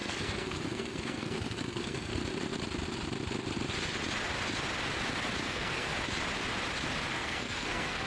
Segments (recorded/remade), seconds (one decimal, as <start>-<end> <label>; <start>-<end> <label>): 0.0-2.2 remade; 2.2-5.4 recorded; 5.4-5.9 remade; 5.9-7.1 recorded; 7.1-8.1 remade